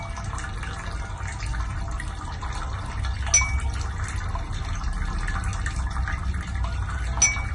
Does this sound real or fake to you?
real